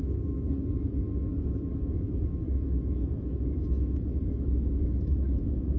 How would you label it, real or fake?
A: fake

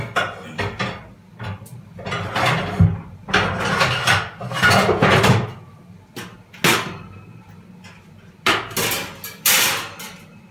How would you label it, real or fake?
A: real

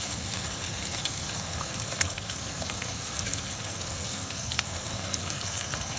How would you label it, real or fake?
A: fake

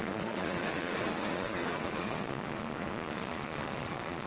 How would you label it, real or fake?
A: fake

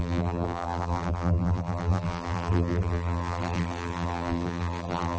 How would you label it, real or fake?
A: fake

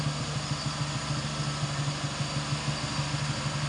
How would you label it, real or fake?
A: real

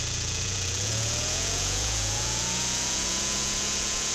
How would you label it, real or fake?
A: fake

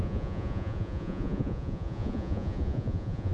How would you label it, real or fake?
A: fake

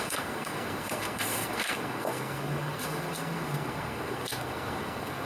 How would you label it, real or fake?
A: fake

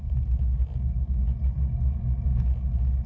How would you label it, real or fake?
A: real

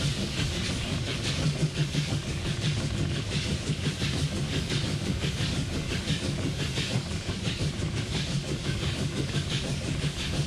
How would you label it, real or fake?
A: fake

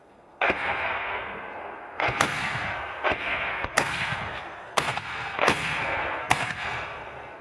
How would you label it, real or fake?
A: fake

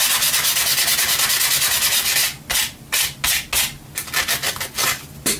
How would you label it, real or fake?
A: real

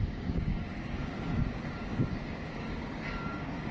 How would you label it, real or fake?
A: fake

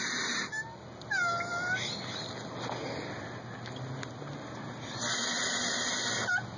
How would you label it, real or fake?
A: real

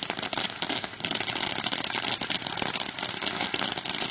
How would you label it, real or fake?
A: real